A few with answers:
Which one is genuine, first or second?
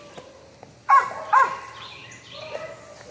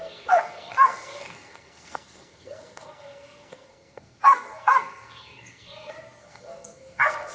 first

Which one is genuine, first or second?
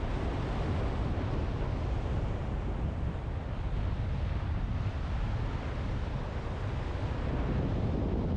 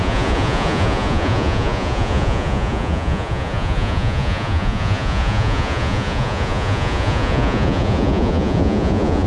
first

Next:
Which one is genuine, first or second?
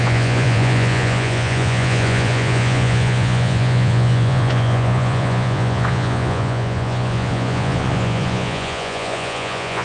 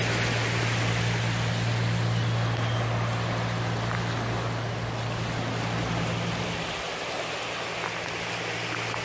second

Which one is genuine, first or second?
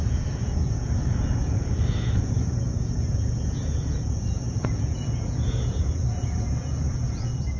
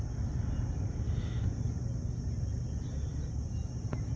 second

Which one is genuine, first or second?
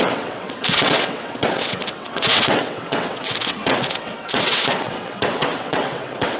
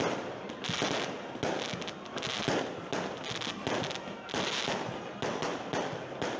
second